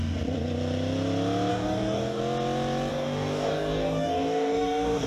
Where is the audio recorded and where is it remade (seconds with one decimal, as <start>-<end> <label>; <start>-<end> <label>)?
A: 0.0-1.5 recorded; 1.5-2.2 remade; 2.2-2.9 recorded; 2.9-5.1 remade